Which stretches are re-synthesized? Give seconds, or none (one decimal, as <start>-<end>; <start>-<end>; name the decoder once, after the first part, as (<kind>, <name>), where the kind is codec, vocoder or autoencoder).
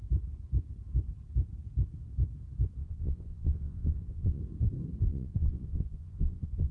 2.8-4.4 (vocoder, Vocos); 5.1-6.7